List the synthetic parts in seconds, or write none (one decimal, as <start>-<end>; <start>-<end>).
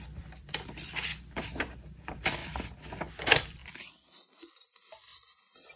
0.0-1.1; 1.6-2.4; 3.1-3.6; 4.4-5.1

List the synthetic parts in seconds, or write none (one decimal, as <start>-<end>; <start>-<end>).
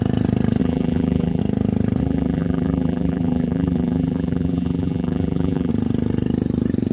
0.6-1.4; 2.0-5.7